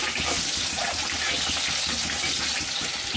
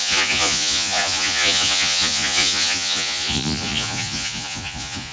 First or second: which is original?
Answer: first